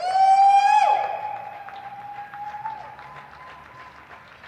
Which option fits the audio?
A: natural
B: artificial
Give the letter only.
A